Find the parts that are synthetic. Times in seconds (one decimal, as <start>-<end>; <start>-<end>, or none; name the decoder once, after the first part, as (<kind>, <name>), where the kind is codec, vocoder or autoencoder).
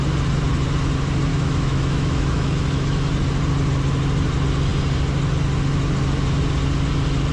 1.3-3.1 (autoencoder, DAC-VAE)